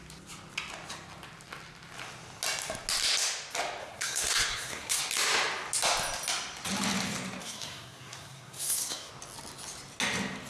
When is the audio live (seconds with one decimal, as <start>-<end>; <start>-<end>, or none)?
0.0-3.8; 5.0-7.4; 9.1-10.5